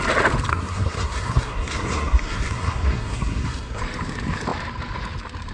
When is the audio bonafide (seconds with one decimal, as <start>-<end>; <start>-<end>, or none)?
0.0-0.5; 3.8-5.5